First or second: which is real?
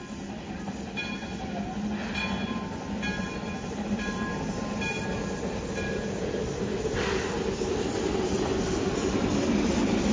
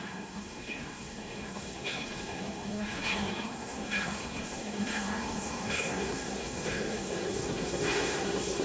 first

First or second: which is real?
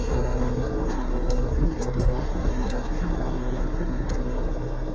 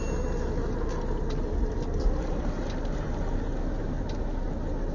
second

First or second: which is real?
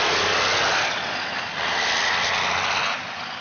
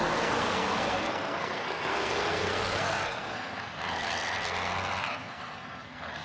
first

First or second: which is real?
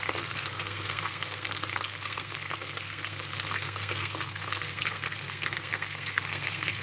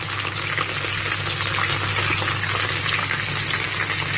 second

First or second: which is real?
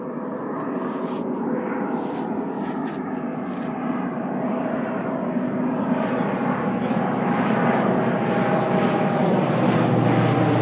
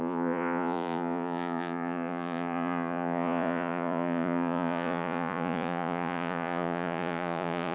first